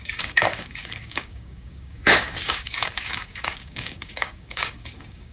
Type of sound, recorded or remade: remade